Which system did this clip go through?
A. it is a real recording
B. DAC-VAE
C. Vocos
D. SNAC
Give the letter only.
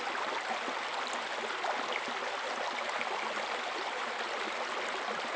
A